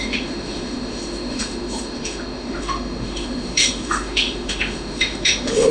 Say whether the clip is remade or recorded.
remade